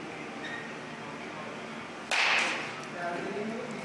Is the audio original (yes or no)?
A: yes